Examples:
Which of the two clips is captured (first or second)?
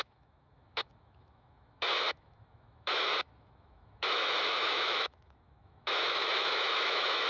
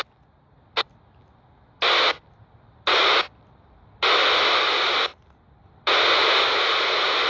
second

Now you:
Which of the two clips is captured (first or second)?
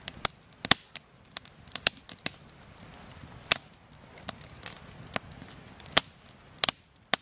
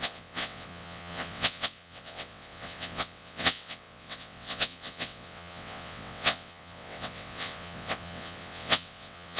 first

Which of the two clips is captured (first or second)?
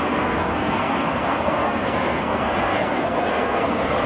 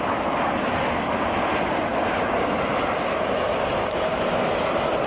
second